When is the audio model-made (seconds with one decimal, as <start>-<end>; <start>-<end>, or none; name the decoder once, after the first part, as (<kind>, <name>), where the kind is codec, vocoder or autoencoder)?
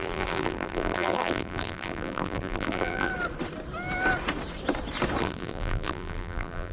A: 0.0-3.1 (vocoder, BigVGAN v2); 5.2-6.7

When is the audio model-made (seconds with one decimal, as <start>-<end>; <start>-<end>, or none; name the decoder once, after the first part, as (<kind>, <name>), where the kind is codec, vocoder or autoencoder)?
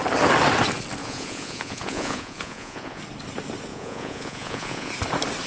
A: 1.0-3.0 (vocoder, Vocos); 3.7-4.9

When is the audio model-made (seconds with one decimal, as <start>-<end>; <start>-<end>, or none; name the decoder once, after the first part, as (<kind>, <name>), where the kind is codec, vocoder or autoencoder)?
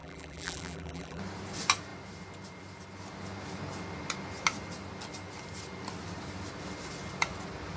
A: 0.0-1.2 (vocoder, BigVGAN v2)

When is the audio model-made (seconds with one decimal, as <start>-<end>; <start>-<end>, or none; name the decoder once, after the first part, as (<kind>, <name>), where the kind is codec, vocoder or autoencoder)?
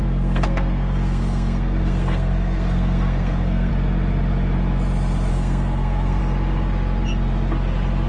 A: 0.0-3.7 (codec, SNAC); 5.3-6.2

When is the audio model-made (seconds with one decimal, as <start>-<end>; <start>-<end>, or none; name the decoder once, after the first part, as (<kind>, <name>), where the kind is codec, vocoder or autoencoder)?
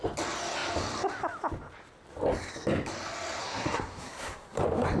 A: 3.4-4.6 (codec, SNAC)